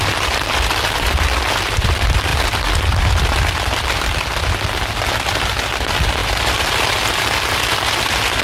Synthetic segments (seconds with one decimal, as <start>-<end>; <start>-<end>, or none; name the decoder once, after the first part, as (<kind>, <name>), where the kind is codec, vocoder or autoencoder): none